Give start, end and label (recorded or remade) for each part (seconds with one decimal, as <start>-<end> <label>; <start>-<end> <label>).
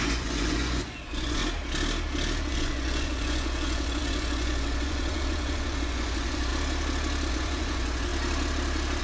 0.0-1.4 remade; 1.4-2.5 recorded; 2.5-6.5 remade; 6.5-7.3 recorded; 7.3-8.1 remade; 8.1-9.0 recorded